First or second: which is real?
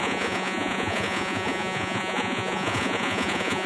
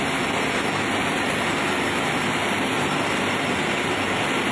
second